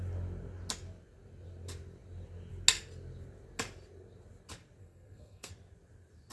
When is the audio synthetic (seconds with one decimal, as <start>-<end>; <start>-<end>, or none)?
4.8-5.5